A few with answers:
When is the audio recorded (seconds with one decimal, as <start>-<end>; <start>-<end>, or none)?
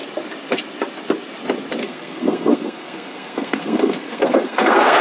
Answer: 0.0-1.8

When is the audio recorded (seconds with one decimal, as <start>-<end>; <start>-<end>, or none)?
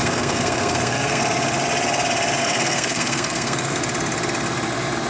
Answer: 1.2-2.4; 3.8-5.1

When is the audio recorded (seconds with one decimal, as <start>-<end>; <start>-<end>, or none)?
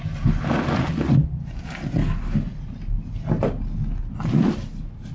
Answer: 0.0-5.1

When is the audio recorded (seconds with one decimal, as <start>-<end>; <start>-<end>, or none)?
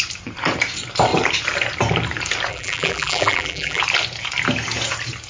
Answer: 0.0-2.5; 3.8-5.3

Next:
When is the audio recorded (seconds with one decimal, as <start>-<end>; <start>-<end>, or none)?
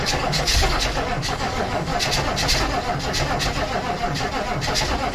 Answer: 1.9-5.1